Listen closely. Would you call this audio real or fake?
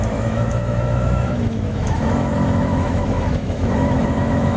fake